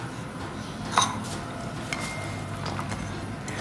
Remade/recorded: recorded